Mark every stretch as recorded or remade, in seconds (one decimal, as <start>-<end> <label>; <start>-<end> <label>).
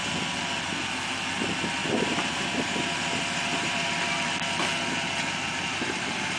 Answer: 0.0-1.8 recorded; 1.8-4.1 remade; 4.1-6.4 recorded